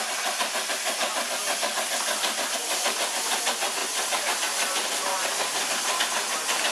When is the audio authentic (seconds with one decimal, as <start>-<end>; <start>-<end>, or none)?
0.0-3.8; 6.0-6.7